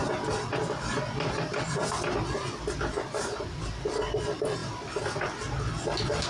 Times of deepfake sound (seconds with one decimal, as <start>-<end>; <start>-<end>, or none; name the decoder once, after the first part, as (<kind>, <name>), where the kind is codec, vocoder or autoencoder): none